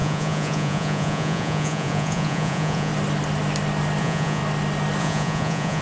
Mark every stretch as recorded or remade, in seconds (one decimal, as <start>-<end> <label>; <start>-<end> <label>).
0.0-2.9 remade; 2.9-4.0 recorded; 4.0-4.4 remade; 4.4-5.0 recorded; 5.0-5.8 remade

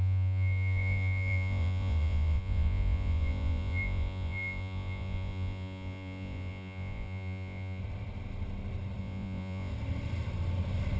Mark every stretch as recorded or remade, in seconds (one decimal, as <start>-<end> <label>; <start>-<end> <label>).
0.0-7.8 remade; 7.8-9.0 recorded; 9.0-9.7 remade; 9.7-11.0 recorded

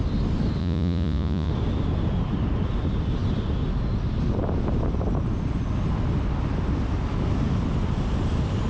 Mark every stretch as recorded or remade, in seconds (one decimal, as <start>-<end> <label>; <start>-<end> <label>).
0.0-0.6 recorded; 0.6-1.5 remade; 1.5-8.7 recorded